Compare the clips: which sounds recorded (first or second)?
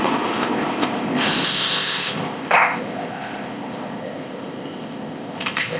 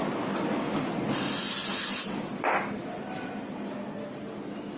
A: second